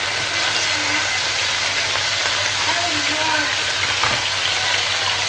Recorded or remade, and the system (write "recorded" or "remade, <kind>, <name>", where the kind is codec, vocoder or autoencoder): recorded